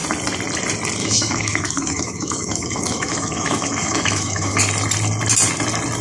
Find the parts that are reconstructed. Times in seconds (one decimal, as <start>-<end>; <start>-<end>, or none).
1.0-4.6